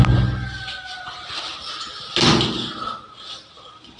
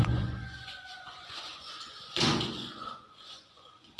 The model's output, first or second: second